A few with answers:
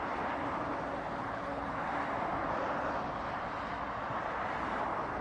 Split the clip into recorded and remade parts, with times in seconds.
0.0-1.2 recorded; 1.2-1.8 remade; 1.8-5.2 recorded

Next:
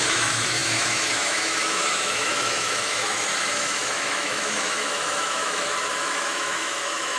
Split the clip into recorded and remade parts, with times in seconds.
0.0-7.2 remade

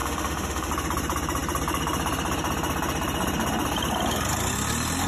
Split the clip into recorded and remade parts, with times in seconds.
0.0-0.7 remade; 0.7-5.1 recorded

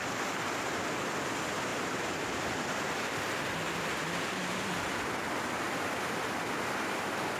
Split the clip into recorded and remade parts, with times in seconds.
0.0-1.7 recorded; 1.7-3.4 remade; 3.4-7.4 recorded